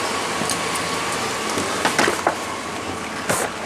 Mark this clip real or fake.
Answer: real